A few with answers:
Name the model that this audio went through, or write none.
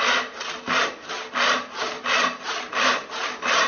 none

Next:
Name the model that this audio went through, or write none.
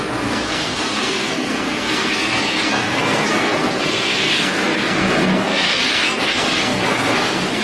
codec, SNAC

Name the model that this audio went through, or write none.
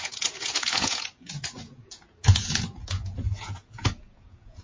vocoder, Vocos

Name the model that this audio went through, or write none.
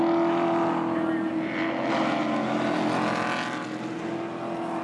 none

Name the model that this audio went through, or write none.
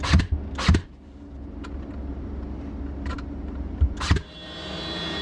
none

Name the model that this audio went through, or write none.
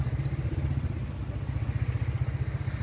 none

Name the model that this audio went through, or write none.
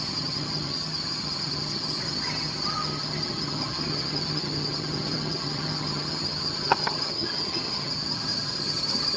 vocoder, HiFi-GAN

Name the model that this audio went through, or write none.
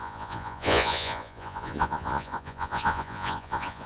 vocoder, Vocos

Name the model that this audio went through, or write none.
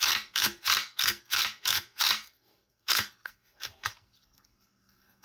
codec, SNAC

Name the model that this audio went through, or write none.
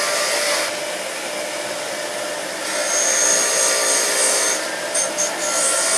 none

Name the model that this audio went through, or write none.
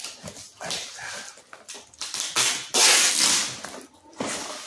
none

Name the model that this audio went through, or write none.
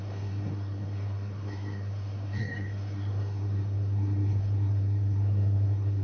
codec, SNAC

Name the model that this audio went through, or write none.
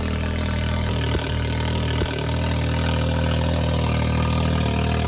none